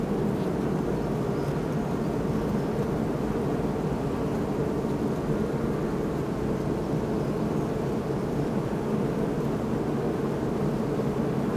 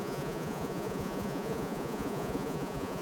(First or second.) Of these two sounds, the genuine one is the first